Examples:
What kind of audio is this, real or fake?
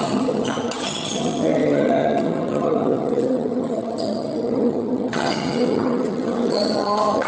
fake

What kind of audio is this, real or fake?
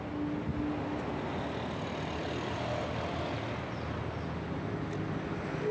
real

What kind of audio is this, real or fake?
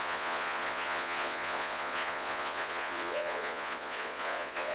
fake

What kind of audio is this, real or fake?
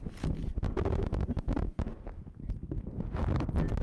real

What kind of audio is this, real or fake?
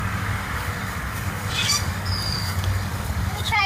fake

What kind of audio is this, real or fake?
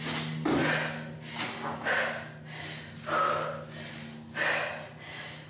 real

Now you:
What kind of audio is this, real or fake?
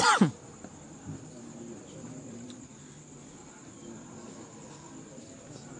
real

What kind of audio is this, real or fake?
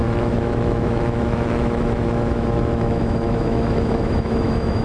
fake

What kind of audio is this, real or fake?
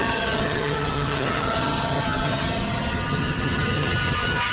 fake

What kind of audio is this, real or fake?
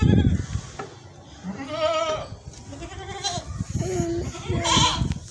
real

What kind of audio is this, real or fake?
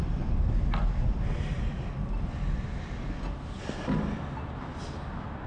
real